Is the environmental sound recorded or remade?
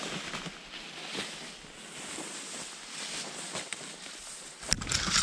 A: recorded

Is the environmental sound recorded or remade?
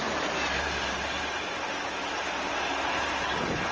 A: remade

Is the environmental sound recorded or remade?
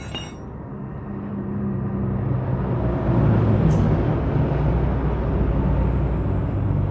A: recorded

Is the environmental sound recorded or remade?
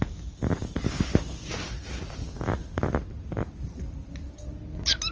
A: recorded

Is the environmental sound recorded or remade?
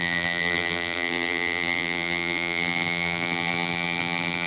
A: remade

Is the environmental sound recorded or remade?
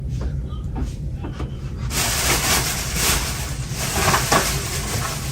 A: remade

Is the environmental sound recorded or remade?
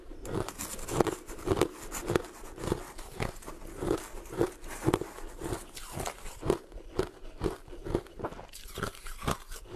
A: remade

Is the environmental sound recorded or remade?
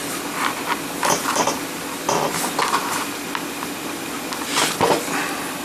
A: recorded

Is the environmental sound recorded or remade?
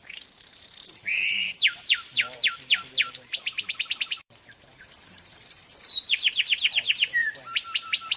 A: remade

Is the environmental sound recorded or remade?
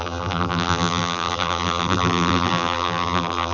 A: remade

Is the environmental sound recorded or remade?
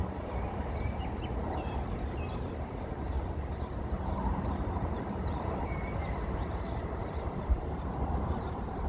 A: remade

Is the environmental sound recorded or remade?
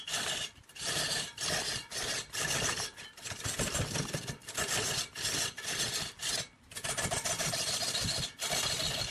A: recorded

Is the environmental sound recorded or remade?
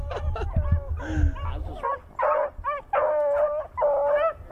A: recorded